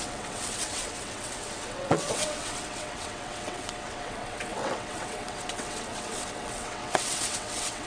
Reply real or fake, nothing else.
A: fake